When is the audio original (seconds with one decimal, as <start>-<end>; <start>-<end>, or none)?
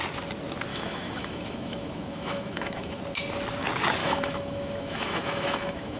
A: 0.0-0.7; 3.0-4.0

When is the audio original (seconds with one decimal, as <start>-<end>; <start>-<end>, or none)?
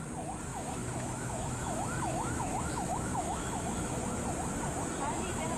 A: 0.0-0.5; 3.9-5.6